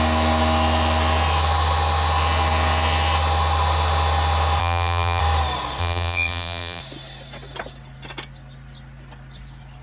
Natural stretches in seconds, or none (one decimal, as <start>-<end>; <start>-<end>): 0.0-4.6; 5.2-5.8; 6.8-9.8